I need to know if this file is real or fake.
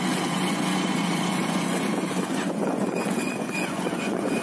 fake